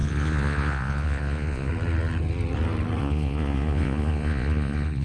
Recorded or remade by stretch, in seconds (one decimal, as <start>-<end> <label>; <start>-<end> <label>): 0.0-1.7 remade; 1.7-3.0 recorded; 3.0-5.0 remade